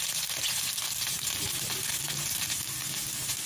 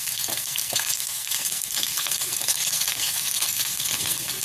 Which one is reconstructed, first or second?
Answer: second